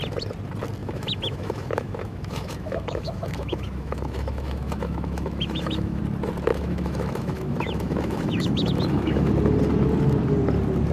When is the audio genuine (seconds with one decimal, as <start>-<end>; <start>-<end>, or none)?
0.0-0.8; 6.0-6.5; 9.3-10.9